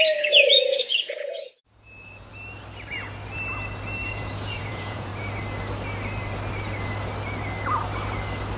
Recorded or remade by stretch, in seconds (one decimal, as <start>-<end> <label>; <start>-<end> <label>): 0.0-2.3 remade; 2.3-4.1 recorded; 4.1-5.1 remade; 5.1-8.6 recorded